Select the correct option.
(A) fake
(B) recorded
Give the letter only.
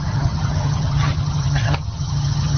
A